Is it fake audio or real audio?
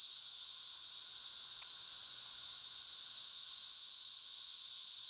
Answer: fake